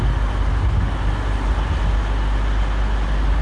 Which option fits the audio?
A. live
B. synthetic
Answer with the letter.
A